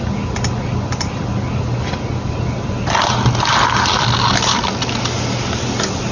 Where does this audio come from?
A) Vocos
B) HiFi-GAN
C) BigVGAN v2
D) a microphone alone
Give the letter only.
D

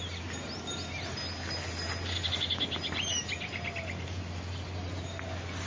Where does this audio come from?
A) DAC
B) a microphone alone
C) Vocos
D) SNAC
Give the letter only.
B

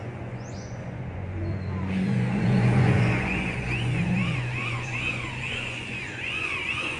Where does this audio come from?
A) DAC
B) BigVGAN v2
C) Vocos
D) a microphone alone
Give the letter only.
C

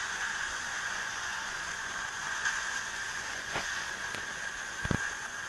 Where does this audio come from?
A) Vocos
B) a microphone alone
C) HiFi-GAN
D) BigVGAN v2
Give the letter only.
A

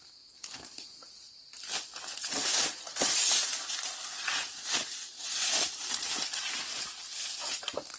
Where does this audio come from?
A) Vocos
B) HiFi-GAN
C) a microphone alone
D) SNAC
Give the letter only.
C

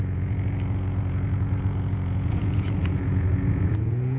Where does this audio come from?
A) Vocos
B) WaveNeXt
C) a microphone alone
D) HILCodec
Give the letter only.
A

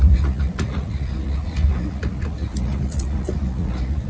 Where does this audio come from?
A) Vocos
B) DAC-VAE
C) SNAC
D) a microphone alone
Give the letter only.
A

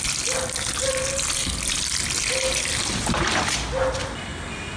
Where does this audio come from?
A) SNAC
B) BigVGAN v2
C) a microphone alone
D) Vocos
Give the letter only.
C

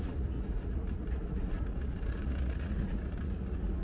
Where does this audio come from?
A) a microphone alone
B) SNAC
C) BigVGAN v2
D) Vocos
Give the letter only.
D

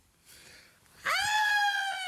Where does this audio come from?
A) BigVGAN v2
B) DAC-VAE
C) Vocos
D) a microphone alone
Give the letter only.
D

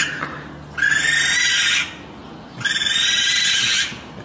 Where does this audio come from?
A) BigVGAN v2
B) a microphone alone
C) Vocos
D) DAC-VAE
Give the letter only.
B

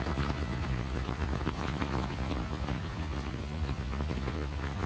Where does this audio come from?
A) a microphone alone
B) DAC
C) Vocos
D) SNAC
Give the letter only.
C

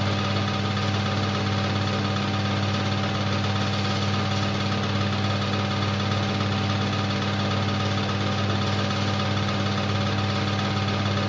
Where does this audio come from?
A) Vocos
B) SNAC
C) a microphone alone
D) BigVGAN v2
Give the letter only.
C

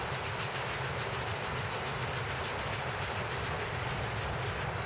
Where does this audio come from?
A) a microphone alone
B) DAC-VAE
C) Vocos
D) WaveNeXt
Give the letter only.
A